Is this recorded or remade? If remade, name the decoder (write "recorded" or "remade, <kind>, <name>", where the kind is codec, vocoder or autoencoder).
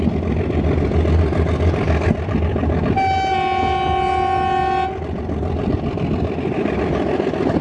recorded